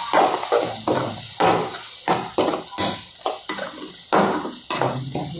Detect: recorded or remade recorded